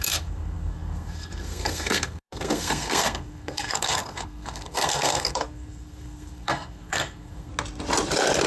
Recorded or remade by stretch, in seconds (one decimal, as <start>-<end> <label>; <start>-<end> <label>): 0.0-7.5 remade; 7.5-8.5 recorded